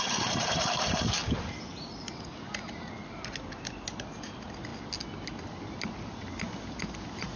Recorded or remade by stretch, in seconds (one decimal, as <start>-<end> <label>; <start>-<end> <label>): 0.0-7.4 recorded